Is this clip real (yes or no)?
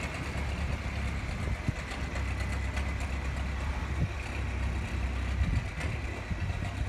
yes